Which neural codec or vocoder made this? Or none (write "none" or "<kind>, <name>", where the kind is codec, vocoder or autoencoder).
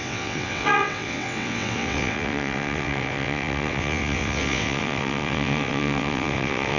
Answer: vocoder, WaveNeXt